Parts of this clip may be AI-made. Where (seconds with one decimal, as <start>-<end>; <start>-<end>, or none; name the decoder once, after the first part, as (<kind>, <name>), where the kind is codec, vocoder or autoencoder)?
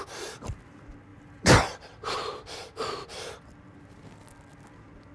1.1-3.3 (vocoder, BigVGAN v2)